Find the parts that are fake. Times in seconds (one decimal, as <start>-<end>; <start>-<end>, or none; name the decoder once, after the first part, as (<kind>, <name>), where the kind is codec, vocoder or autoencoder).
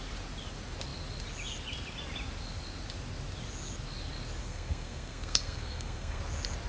4.4-6.2 (codec, SNAC)